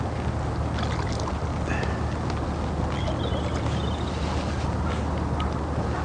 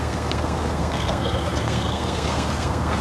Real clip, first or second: first